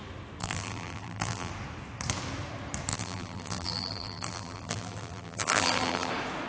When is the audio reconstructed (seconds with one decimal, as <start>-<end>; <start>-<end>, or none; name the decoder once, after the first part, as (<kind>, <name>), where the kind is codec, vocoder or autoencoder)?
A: 0.4-1.5 (vocoder, BigVGAN v2); 2.9-6.1